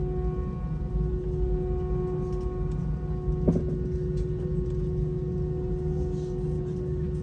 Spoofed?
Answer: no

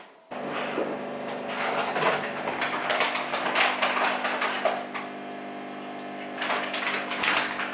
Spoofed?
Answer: no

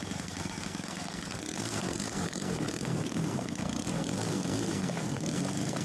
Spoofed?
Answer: yes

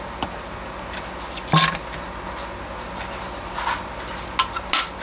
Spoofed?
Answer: no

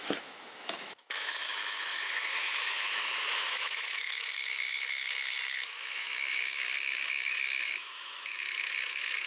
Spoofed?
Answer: yes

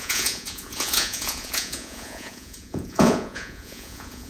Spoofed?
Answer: yes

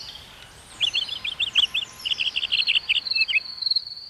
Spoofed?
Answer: no